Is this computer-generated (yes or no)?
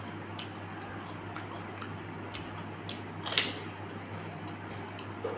no